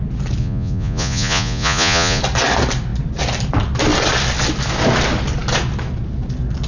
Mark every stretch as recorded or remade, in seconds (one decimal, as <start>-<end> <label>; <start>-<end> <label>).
0.0-0.4 recorded; 0.4-2.2 remade; 2.2-6.7 recorded